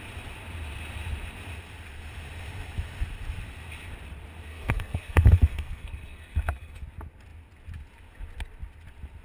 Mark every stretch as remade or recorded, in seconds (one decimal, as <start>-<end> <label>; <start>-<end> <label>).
0.0-4.5 recorded; 4.5-6.8 remade; 6.8-9.2 recorded